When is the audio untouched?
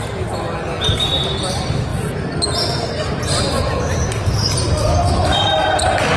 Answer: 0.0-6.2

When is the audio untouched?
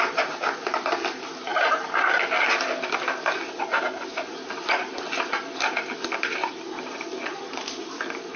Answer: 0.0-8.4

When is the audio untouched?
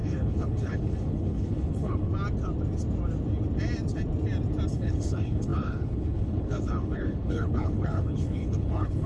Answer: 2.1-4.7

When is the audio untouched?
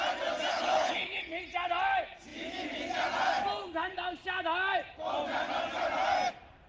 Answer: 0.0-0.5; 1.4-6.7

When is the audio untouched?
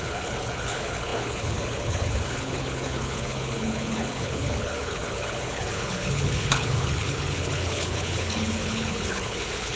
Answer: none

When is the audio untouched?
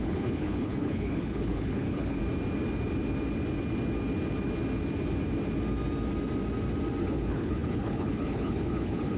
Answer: 2.2-7.0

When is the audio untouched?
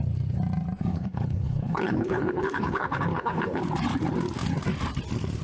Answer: 0.0-0.9; 3.6-5.4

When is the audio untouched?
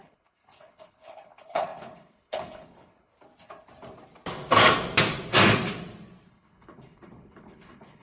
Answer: 3.1-6.3